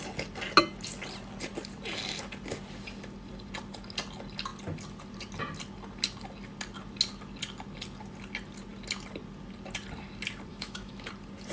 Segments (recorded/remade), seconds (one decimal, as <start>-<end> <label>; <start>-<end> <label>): 0.0-10.5 recorded; 10.5-11.1 remade; 11.1-11.5 recorded